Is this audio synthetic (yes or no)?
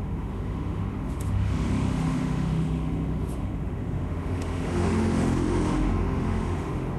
yes